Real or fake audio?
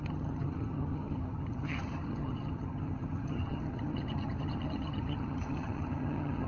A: fake